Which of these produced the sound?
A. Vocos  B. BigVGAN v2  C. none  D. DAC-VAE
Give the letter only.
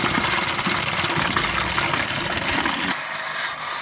C